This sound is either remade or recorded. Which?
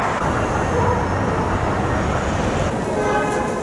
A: recorded